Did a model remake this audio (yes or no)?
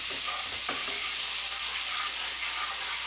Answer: no